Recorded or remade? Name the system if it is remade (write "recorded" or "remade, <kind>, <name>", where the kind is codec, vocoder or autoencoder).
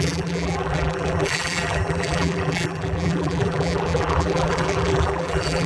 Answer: remade, vocoder, BigVGAN v2